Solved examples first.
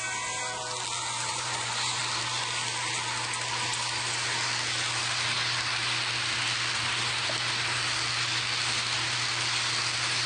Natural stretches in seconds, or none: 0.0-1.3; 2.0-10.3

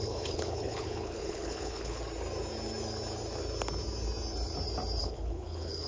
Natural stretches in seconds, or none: 2.0-5.0

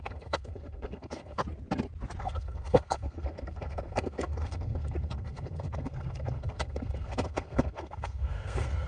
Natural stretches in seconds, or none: 1.4-2.2